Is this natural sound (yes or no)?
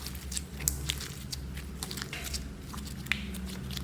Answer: yes